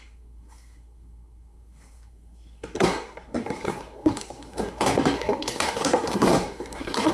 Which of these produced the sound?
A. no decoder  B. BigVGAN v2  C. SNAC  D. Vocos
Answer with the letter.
C